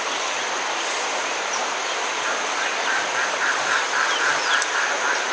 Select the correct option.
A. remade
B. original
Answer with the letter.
B